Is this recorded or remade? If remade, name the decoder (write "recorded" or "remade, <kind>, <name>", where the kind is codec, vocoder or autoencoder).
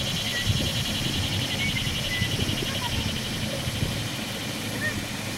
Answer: recorded